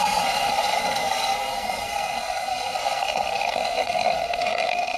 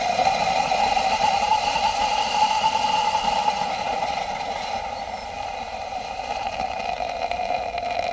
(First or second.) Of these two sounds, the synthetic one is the first